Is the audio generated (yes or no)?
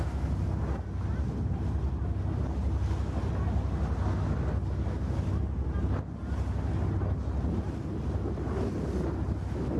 no